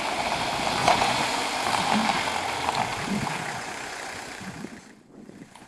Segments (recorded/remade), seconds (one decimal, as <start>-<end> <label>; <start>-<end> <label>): 0.0-0.8 recorded; 0.8-1.4 remade; 1.4-2.9 recorded; 2.9-5.7 remade